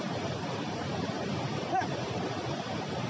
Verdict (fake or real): fake